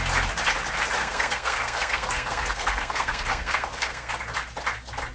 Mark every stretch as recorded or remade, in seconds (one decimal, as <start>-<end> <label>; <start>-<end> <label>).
0.0-1.0 recorded; 1.0-4.1 remade; 4.1-5.1 recorded

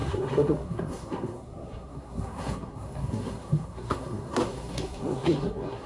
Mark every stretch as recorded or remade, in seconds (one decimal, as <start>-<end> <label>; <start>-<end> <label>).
0.0-5.9 remade